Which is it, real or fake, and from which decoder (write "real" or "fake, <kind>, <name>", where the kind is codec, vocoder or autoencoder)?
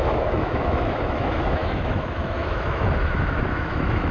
fake, autoencoder, DAC-VAE